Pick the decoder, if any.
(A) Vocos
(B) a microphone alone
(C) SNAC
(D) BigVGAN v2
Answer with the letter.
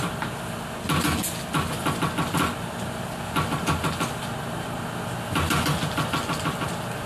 B